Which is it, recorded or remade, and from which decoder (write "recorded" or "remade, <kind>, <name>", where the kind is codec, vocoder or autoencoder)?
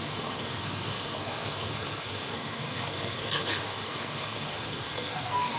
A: remade, codec, SNAC